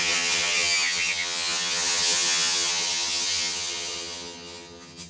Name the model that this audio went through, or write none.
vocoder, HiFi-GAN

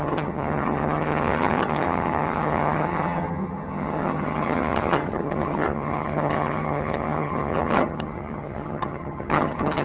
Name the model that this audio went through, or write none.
vocoder, HiFi-GAN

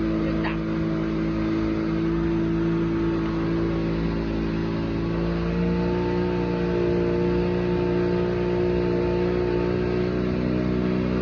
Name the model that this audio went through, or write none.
none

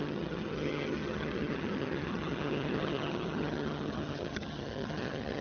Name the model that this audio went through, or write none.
vocoder, HiFi-GAN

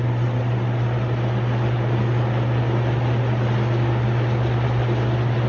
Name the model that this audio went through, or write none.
none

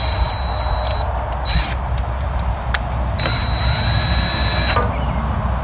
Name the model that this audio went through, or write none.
none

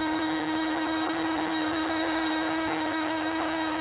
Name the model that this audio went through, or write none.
vocoder, HiFi-GAN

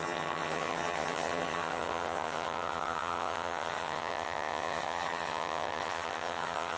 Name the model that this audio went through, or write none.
vocoder, HiFi-GAN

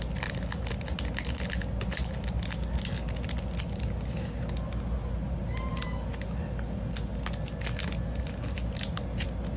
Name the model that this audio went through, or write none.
none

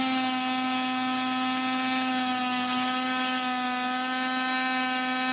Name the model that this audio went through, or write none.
none